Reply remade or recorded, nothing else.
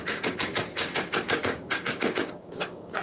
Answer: remade